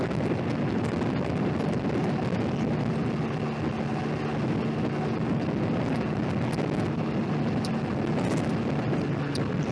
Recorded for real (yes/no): yes